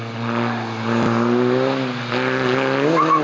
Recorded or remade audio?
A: recorded